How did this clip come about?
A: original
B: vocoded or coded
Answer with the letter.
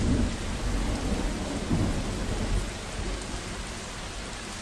A